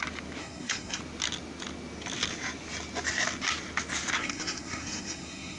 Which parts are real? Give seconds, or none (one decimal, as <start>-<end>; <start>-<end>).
0.0-0.4; 1.0-4.2